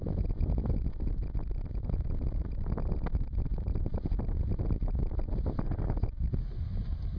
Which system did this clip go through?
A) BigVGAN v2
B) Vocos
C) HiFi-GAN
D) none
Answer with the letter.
D